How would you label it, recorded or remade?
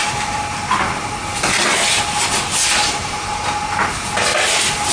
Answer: recorded